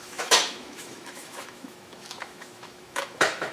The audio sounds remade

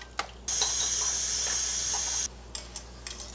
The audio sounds recorded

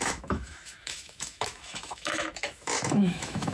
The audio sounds remade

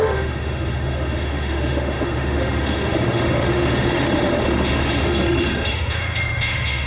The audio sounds remade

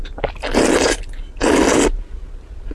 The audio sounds recorded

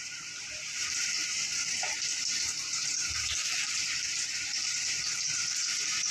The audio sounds remade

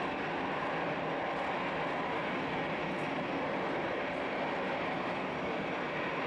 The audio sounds recorded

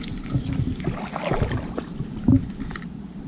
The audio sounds recorded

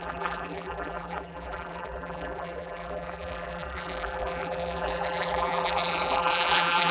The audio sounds remade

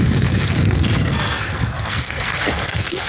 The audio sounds remade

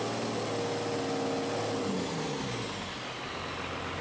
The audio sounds recorded